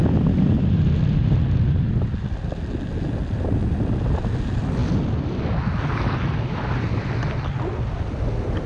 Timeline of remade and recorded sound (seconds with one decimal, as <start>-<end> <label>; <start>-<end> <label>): 0.0-8.7 recorded